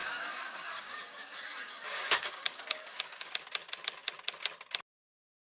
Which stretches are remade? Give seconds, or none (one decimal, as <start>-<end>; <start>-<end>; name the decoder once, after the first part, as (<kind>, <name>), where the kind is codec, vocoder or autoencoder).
0.0-3.3 (codec, DAC)